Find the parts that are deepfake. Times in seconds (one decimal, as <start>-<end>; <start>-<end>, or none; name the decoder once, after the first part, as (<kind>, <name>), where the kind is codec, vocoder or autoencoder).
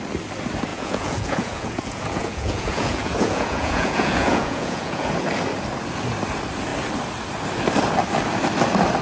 0.7-5.1 (vocoder, Vocos)